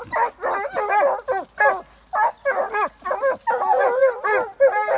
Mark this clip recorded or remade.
recorded